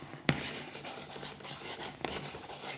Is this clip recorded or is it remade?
remade